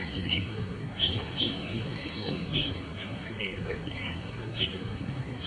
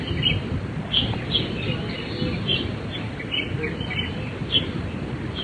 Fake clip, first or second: first